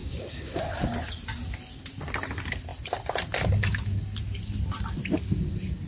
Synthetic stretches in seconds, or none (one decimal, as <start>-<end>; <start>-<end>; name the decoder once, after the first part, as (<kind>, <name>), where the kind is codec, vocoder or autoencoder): 0.0-0.6 (codec, DAC)